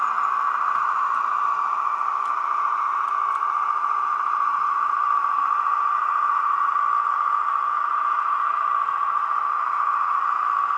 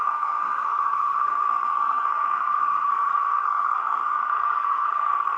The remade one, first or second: second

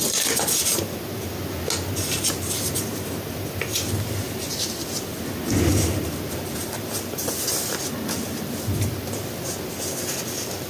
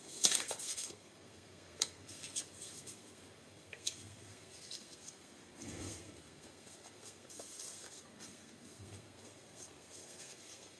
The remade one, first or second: second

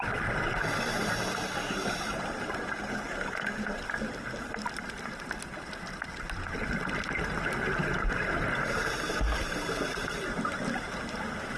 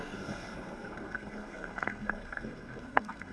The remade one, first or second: second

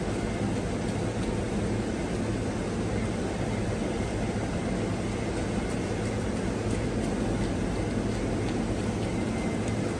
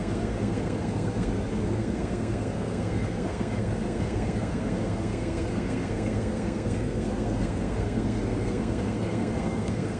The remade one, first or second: second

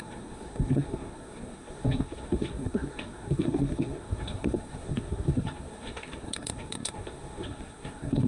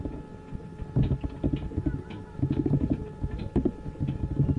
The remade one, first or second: first